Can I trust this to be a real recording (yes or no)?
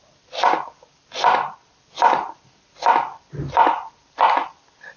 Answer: yes